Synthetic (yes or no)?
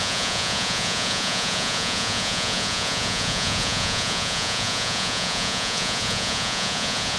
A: yes